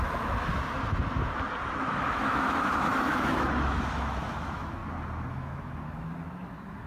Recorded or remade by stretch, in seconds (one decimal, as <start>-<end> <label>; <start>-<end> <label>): 0.0-0.5 remade; 0.5-1.8 recorded; 1.8-4.8 remade; 4.8-5.3 recorded; 5.3-6.9 remade

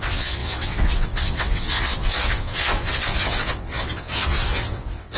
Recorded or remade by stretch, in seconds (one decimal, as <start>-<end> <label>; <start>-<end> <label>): 0.0-5.2 remade

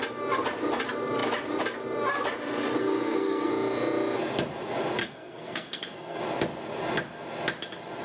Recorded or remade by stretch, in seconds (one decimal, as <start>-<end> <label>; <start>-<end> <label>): 0.0-2.8 recorded; 2.8-3.5 remade; 3.5-5.0 recorded; 5.0-6.2 remade; 6.2-8.0 recorded

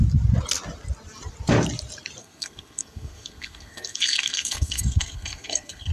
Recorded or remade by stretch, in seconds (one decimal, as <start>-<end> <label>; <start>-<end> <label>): 0.0-2.2 recorded; 2.2-5.9 remade

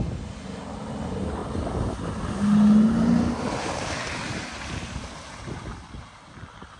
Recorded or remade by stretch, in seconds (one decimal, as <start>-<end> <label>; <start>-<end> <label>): 0.0-6.8 recorded